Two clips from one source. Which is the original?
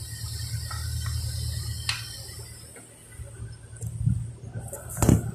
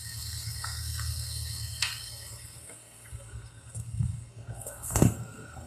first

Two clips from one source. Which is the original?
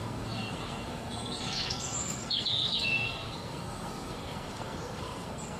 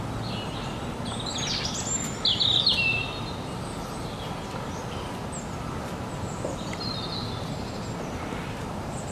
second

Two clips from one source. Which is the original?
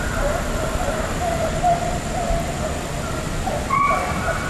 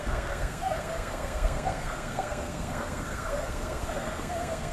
first